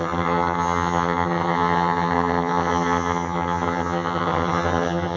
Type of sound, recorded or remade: remade